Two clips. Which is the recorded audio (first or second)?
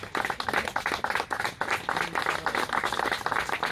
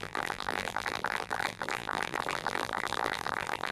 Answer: first